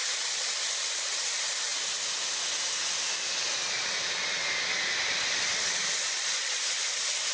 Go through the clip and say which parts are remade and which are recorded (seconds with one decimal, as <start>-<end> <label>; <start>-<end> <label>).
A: 0.0-6.0 recorded; 6.0-6.5 remade; 6.5-7.3 recorded